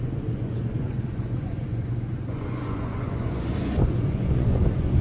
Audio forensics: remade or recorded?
remade